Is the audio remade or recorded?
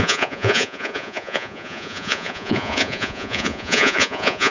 remade